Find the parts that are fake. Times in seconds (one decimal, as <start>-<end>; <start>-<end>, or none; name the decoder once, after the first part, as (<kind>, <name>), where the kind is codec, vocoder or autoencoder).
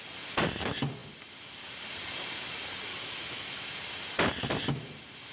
2.9-3.7 (autoencoder, DAC-VAE)